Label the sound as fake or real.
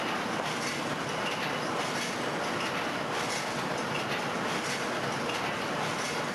real